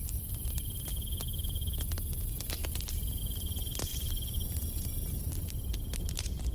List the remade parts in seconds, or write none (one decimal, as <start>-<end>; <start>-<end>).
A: 2.6-3.2; 3.9-5.5